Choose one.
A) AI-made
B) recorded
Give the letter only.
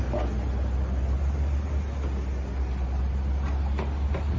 B